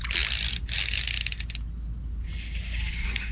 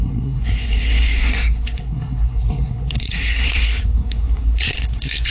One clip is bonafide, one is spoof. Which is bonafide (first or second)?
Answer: first